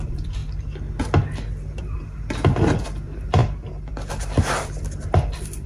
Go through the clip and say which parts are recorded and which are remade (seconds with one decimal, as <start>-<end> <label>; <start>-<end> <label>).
0.0-0.4 remade; 0.4-1.8 recorded; 1.8-5.7 remade